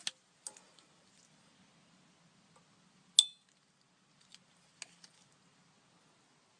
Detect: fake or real real